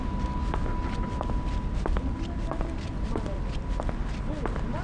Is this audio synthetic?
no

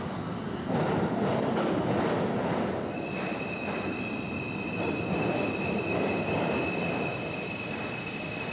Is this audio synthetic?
no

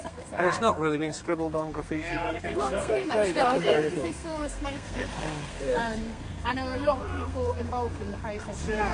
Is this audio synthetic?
yes